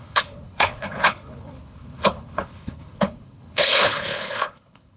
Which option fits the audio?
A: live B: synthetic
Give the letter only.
B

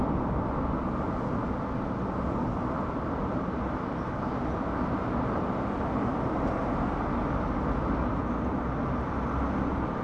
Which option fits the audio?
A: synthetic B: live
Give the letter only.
B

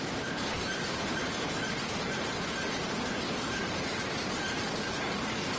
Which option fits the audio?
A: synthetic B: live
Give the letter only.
A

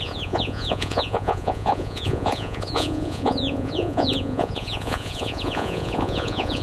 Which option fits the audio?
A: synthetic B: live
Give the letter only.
A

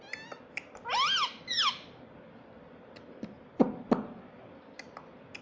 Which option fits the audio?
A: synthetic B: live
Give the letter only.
B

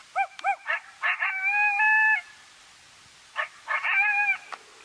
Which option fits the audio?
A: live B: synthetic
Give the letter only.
A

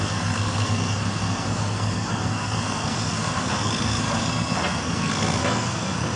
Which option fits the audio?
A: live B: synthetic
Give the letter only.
B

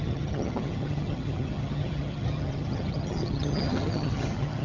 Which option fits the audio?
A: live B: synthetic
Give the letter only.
B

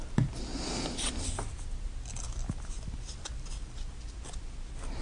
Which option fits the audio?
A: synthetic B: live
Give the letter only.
B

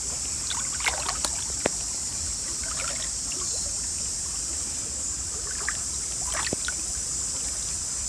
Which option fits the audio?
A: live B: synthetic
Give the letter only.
A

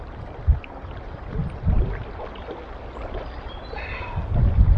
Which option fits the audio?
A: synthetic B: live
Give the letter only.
B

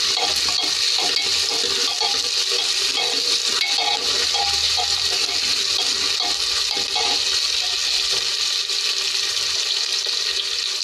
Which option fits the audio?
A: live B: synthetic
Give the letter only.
A